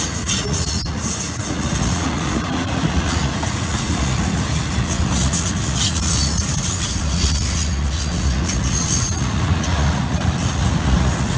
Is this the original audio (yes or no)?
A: no